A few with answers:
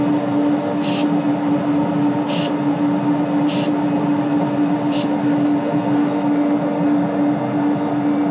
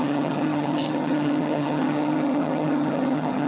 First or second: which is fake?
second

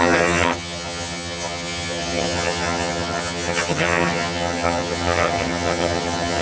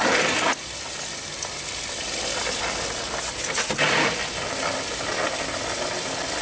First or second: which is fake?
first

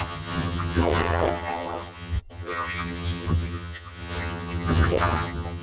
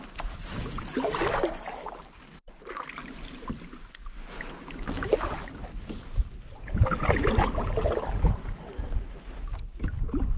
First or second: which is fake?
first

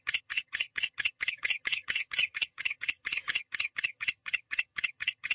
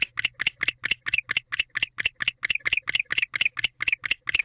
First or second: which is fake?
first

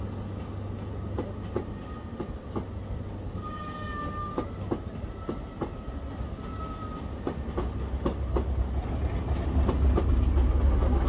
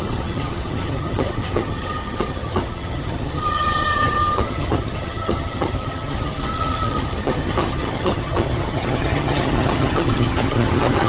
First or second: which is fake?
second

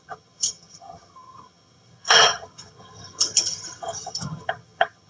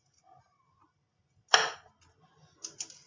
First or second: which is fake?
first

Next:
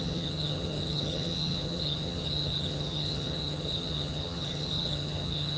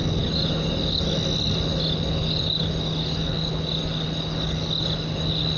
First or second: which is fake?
first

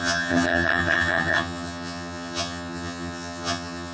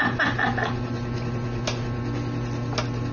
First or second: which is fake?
first